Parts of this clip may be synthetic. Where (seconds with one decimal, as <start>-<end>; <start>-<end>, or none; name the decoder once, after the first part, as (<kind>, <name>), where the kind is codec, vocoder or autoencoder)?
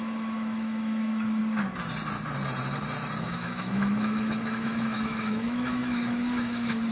0.0-1.4 (autoencoder, DAC-VAE); 3.2-6.9